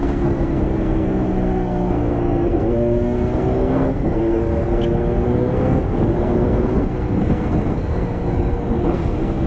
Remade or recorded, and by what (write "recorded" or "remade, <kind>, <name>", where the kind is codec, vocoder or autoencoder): remade, codec, SNAC